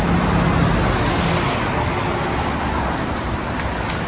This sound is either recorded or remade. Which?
recorded